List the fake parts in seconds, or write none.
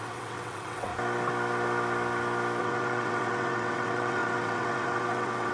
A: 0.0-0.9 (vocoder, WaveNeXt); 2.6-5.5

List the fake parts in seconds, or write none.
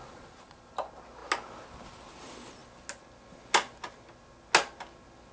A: 0.0-0.7 (vocoder, Vocos)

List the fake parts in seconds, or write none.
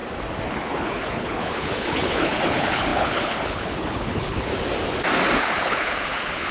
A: 0.5-4.5 (codec, HILCodec); 5.4-6.5